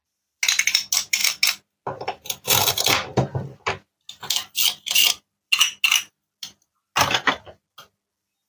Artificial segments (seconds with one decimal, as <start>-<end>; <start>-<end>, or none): none

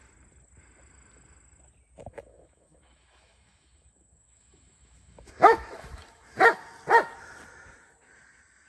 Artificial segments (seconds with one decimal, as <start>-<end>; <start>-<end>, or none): 2.0-6.6

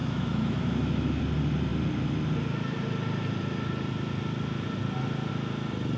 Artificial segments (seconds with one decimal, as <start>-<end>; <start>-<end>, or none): 0.0-1.2

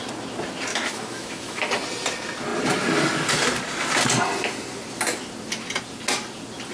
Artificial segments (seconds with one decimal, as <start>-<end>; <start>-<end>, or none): 0.7-1.7

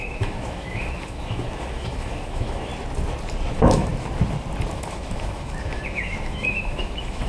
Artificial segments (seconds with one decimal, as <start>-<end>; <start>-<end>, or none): 0.0-2.7; 3.5-3.9; 4.7-7.3

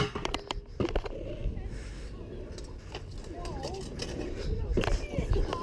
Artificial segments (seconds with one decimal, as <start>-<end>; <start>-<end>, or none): none

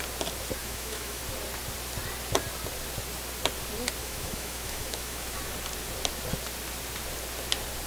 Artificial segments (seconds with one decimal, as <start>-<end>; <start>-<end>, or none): 0.6-1.2; 4.0-5.4